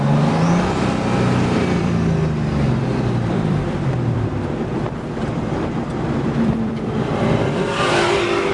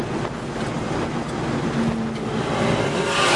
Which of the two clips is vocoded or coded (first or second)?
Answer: first